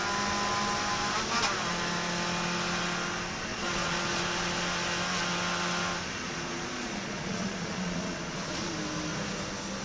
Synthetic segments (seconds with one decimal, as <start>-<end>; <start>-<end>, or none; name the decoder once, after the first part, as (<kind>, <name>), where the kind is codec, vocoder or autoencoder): 3.5-4.2 (vocoder, Vocos); 6.3-8.7